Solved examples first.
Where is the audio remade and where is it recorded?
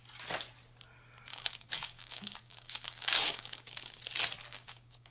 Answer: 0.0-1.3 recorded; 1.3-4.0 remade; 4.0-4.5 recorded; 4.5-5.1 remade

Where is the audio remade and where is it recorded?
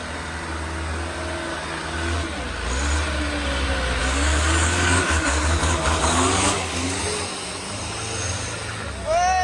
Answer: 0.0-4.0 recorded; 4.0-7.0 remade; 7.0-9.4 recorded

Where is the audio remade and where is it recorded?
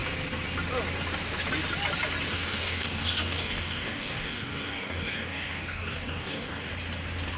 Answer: 0.0-2.3 recorded; 2.3-6.7 remade; 6.7-7.4 recorded